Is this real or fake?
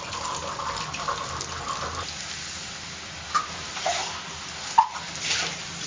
real